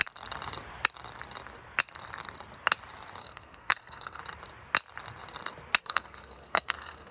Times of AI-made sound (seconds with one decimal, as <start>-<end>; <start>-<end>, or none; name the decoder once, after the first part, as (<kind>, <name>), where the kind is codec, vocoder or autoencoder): 3.2-4.2 (codec, SNAC); 5.8-7.1